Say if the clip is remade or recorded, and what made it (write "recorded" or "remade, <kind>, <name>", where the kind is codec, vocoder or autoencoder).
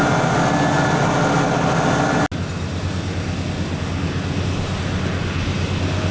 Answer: recorded